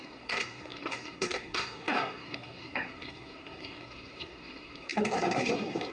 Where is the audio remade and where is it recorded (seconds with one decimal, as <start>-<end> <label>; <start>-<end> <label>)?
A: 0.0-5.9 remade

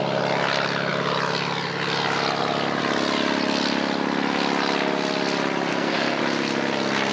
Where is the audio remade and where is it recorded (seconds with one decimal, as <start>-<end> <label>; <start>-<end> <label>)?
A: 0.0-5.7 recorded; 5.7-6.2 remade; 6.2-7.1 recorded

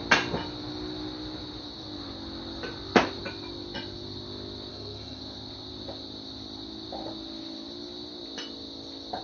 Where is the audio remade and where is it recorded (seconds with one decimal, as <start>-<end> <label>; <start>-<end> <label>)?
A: 0.0-4.7 recorded; 4.7-5.2 remade; 5.2-9.2 recorded